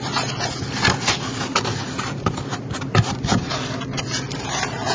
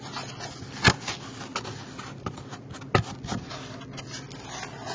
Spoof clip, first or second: first